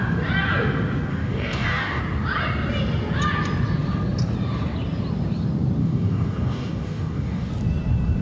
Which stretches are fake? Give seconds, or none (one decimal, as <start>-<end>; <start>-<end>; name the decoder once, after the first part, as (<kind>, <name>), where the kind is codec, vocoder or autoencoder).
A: 1.1-2.0 (codec, DAC); 5.8-7.5